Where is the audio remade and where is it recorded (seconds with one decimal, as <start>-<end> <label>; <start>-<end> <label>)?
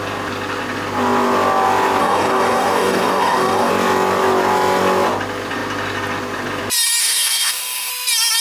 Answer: 0.0-2.0 recorded; 2.0-3.7 remade; 3.7-7.0 recorded; 7.0-7.9 remade; 7.9-8.4 recorded